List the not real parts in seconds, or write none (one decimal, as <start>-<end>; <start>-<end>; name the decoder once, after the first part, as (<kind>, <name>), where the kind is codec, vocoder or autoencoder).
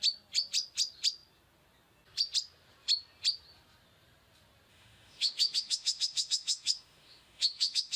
4.7-8.0 (autoencoder, DAC-VAE)